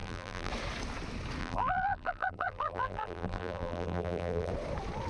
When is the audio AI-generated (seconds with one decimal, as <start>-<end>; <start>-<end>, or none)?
0.0-0.5; 1.4-4.5